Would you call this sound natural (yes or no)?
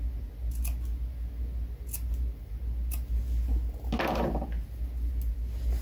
yes